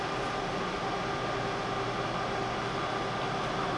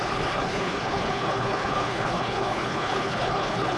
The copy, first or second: second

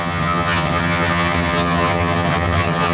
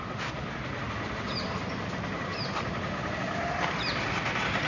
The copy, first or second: first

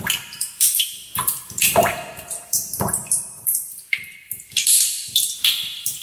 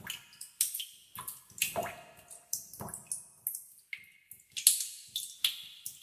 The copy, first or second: first